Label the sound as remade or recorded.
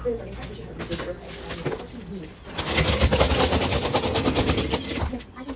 recorded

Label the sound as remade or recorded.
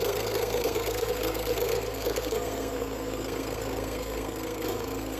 remade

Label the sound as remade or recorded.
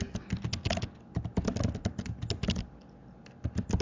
recorded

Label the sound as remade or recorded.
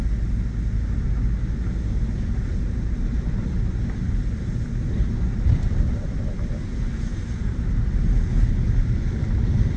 recorded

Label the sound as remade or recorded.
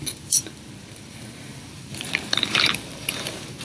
remade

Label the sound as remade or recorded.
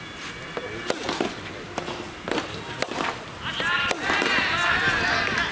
recorded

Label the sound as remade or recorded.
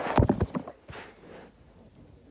recorded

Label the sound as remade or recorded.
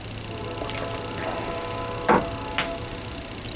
recorded